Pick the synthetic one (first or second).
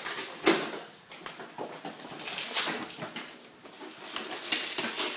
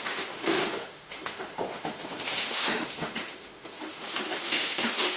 second